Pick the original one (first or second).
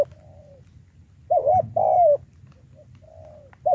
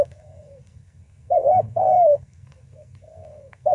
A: first